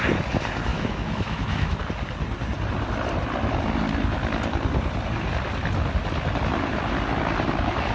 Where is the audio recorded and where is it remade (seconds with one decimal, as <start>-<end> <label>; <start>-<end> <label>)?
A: 0.0-0.7 recorded; 0.7-1.8 remade; 1.8-7.9 recorded